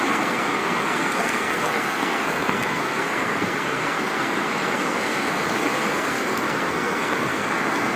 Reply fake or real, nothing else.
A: fake